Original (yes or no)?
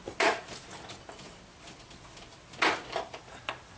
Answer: yes